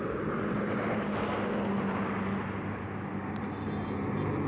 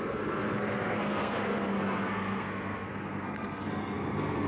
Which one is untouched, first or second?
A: first